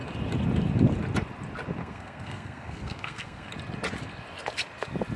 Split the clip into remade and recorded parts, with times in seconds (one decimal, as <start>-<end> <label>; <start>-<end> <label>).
0.0-1.8 recorded; 1.8-3.5 remade; 3.5-5.2 recorded